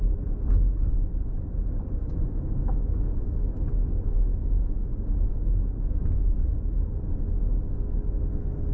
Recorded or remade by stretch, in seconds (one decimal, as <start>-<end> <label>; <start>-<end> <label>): 0.0-2.0 recorded; 2.0-3.6 remade; 3.6-4.3 recorded; 4.3-4.9 remade; 4.9-8.7 recorded